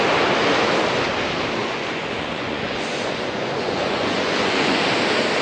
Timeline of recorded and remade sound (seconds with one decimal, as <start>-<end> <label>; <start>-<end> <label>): 0.0-1.6 recorded; 1.6-4.8 remade; 4.8-5.4 recorded